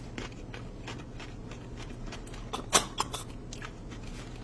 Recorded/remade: recorded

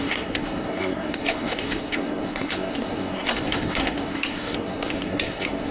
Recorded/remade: remade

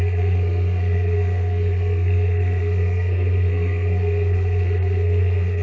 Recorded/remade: remade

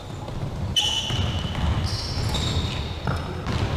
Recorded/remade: recorded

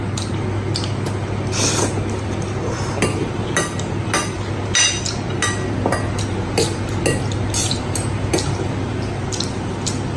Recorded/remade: recorded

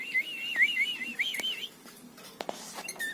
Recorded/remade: recorded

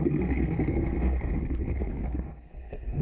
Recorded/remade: remade